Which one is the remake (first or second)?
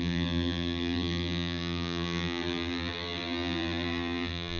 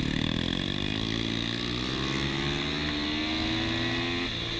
first